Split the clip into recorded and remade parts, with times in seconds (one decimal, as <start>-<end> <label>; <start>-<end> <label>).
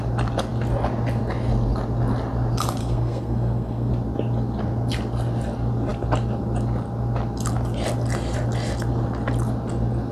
0.0-2.8 recorded; 2.8-3.9 remade; 3.9-10.1 recorded